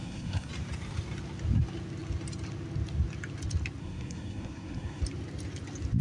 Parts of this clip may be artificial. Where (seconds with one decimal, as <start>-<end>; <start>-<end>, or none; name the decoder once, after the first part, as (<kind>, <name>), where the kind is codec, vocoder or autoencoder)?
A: 0.0-0.5 (codec, SNAC); 3.8-5.0